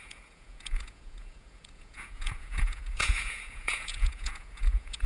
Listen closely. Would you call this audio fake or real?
fake